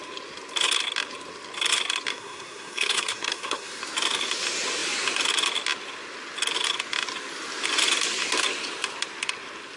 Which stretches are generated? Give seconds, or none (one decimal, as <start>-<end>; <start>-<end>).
2.1-3.8